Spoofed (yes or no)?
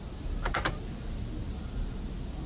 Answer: no